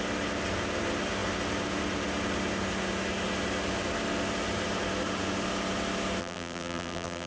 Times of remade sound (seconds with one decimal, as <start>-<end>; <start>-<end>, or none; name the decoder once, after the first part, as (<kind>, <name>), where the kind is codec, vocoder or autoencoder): 6.2-7.3 (vocoder, BigVGAN v2)